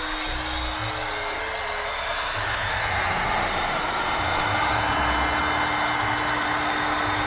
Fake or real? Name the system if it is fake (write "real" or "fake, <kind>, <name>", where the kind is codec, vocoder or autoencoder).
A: real